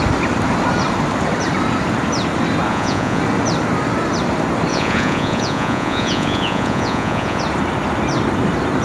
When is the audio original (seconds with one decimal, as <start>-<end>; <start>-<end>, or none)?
0.0-2.7; 3.2-4.7; 7.4-8.8